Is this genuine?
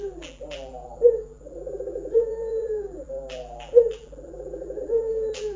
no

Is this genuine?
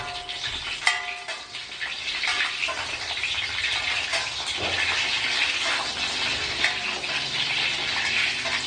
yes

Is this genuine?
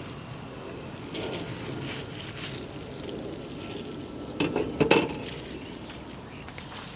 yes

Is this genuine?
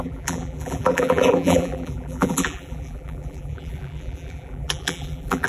no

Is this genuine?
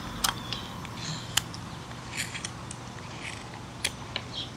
yes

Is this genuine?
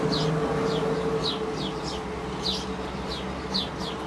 yes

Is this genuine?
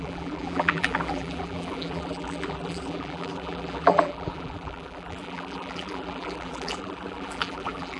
no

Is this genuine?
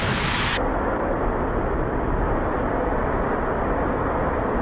yes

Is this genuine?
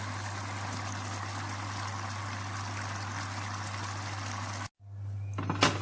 yes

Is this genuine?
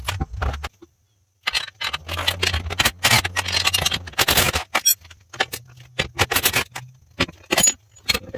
yes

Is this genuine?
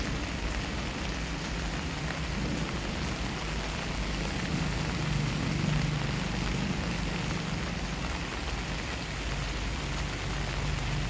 yes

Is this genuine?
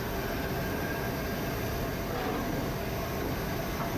yes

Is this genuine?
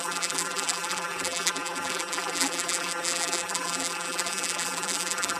no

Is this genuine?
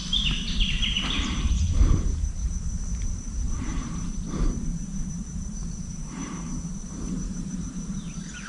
no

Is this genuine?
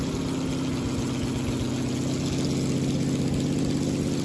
yes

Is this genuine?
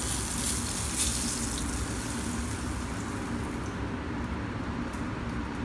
yes